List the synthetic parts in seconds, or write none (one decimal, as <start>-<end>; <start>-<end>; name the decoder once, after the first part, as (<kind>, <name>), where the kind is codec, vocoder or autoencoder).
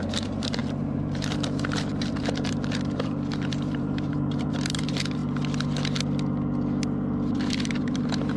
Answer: 0.0-5.2 (vocoder, BigVGAN v2); 7.3-8.4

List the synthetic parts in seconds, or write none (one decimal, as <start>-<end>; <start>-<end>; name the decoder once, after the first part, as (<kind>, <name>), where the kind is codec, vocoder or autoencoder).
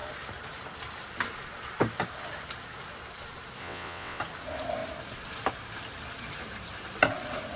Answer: 3.6-4.2 (vocoder, WaveNeXt)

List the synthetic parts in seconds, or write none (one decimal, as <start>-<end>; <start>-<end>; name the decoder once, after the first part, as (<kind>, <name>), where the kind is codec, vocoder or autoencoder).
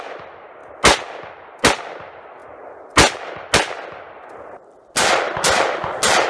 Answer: none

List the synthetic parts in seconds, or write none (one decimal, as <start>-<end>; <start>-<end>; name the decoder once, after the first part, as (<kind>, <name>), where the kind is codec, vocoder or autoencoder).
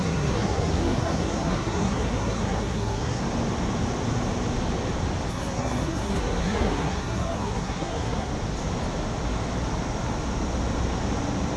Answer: 0.0-3.2 (codec, SNAC); 5.3-8.3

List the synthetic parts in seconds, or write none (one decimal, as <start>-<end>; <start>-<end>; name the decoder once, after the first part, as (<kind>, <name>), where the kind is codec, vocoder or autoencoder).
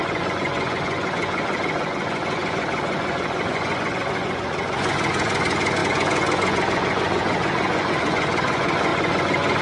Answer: 0.0-9.6 (vocoder, Vocos)